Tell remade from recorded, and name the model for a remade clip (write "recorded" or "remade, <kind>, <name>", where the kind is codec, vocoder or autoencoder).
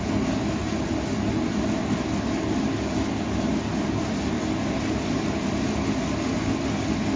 recorded